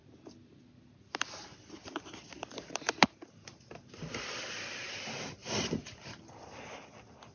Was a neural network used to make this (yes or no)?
no